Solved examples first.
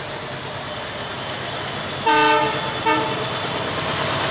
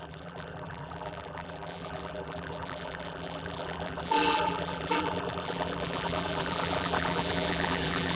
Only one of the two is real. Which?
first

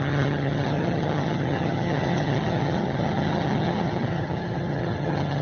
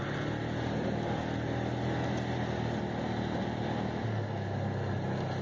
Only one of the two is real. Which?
second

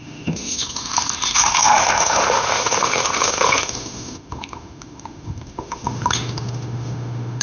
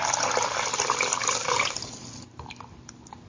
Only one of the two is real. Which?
second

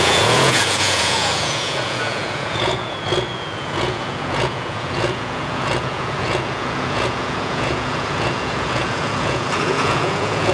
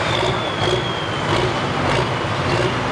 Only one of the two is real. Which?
second